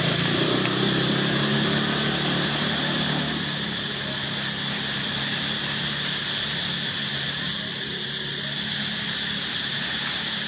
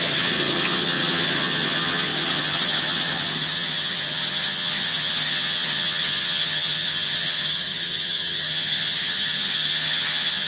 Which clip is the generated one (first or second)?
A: second